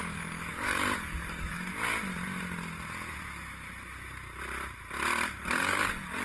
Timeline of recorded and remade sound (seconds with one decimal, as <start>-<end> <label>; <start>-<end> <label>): 0.0-1.7 remade; 1.7-5.4 recorded; 5.4-6.2 remade